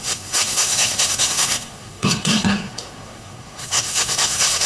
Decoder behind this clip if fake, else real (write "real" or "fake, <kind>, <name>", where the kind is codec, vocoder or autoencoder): fake, codec, SNAC